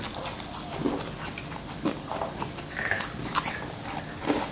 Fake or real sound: real